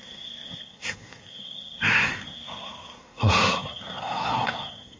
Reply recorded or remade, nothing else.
remade